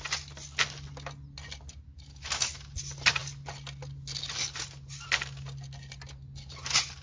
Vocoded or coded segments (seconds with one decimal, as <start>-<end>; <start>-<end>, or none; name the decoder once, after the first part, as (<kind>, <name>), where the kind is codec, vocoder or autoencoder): none